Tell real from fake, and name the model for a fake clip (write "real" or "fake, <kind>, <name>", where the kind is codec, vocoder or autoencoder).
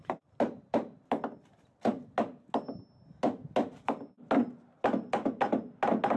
real